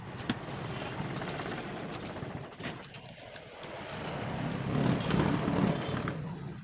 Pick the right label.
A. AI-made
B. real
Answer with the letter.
B